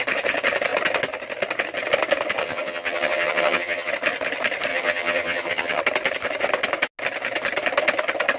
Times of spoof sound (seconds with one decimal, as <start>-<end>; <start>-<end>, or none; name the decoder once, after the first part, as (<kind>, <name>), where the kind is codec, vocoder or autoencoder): 2.4-3.9 (vocoder, HiFi-GAN); 4.7-5.8